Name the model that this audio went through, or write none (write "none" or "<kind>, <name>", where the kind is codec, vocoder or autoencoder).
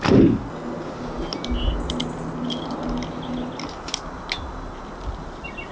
none